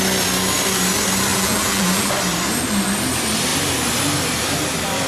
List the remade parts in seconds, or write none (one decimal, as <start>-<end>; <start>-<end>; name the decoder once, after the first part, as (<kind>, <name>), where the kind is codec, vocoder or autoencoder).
1.3-2.1 (vocoder, BigVGAN v2)